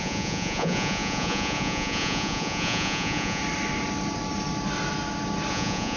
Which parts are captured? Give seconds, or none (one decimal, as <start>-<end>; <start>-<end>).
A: 3.4-5.5